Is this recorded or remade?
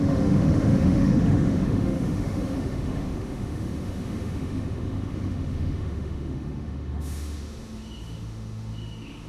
remade